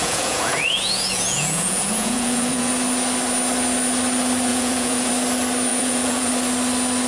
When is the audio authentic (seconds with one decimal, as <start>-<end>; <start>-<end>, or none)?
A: 2.7-4.5; 5.1-5.7; 6.3-7.1